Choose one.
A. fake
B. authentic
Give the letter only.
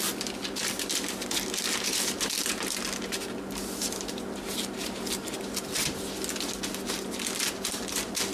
B